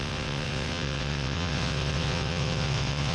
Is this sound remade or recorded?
remade